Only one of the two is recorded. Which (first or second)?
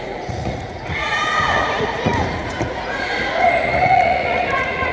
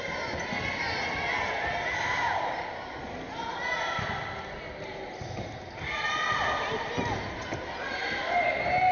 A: second